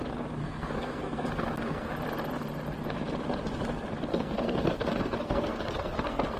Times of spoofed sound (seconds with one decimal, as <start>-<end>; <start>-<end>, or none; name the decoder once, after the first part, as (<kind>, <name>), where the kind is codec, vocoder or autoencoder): 0.4-1.9 (codec, SNAC); 4.1-6.4